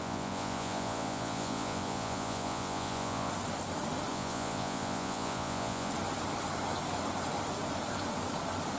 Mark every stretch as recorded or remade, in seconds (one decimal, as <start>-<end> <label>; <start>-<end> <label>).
0.0-3.3 remade; 3.3-4.1 recorded; 4.1-5.9 remade; 5.9-8.8 recorded